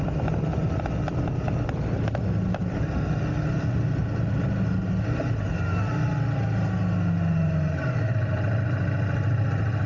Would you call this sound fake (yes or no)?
no